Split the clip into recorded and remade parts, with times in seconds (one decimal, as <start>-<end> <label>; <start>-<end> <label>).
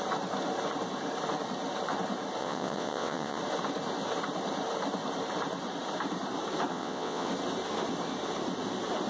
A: 0.0-2.4 recorded; 2.4-3.4 remade; 3.4-6.7 recorded; 6.7-7.3 remade; 7.3-9.1 recorded